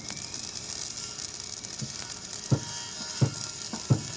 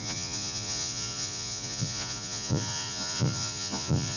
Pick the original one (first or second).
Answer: first